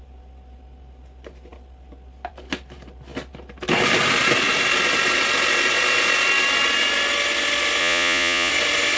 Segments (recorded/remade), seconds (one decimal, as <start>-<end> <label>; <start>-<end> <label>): 0.0-7.8 recorded; 7.8-8.5 remade; 8.5-9.0 recorded